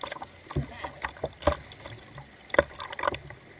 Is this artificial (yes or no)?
no